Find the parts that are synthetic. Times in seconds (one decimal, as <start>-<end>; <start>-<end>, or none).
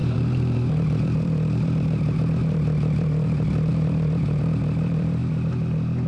0.0-5.2